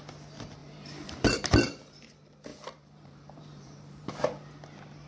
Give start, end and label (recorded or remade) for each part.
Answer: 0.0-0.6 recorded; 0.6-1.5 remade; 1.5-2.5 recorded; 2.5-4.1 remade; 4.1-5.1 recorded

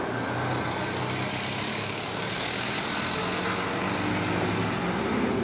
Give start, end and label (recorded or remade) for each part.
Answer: 0.0-1.7 recorded; 1.7-2.8 remade; 2.8-5.4 recorded

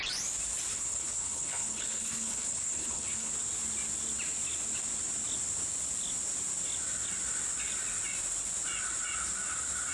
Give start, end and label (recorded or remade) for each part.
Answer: 0.0-0.7 recorded; 0.7-3.3 remade; 3.3-9.9 recorded

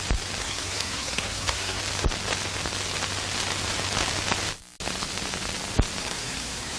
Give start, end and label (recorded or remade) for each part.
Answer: 0.0-0.4 recorded; 0.4-1.8 remade; 1.8-6.0 recorded; 6.0-6.8 remade

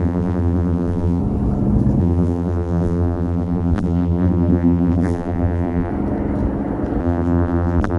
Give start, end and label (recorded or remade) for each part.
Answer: 0.0-1.2 remade; 1.2-2.0 recorded; 2.0-5.9 remade; 5.9-7.0 recorded; 7.0-8.0 remade

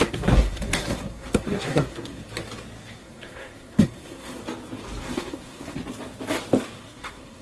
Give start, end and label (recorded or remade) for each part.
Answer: 0.0-2.2 remade; 2.2-3.0 recorded; 3.0-4.4 remade; 4.4-5.0 recorded; 5.0-5.8 remade; 5.8-6.8 recorded; 6.8-7.4 remade

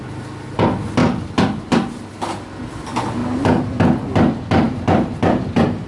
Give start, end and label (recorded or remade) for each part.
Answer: 0.0-5.9 recorded

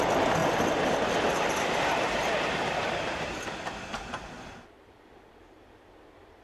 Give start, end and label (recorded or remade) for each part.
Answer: 0.0-6.4 recorded